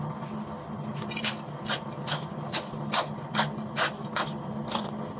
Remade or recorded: recorded